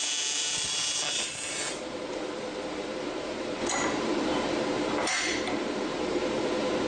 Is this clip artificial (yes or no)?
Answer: yes